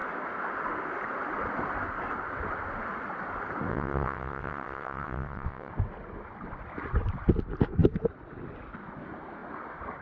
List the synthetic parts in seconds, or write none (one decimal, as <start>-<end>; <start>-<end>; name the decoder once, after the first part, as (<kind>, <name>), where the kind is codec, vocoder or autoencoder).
3.7-5.7 (vocoder, WaveNeXt)